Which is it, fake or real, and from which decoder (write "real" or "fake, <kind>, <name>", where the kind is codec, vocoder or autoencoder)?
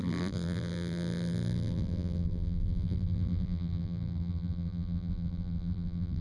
fake, vocoder, BigVGAN v2